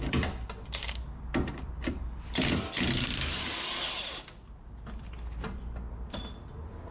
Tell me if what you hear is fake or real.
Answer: real